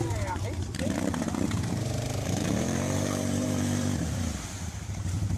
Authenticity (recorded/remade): remade